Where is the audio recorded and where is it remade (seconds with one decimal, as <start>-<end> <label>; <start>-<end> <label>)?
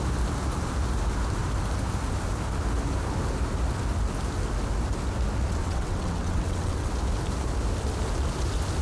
0.0-5.6 recorded; 5.6-6.9 remade; 6.9-8.8 recorded